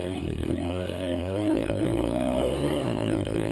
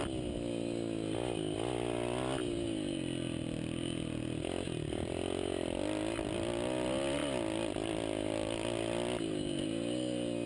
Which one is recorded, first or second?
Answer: second